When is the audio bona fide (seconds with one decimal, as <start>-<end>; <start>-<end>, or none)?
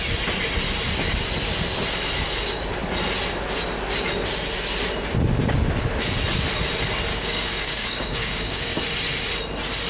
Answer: 0.0-7.1; 8.8-9.9